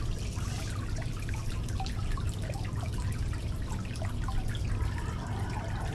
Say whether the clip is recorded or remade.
recorded